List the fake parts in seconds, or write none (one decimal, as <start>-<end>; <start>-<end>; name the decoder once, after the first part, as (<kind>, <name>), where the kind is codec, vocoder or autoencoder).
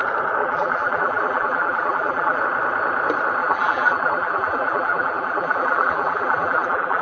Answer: 0.4-2.4 (vocoder, BigVGAN v2); 3.4-7.0